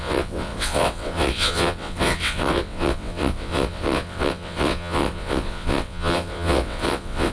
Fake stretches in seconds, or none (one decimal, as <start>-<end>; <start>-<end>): 0.0-7.3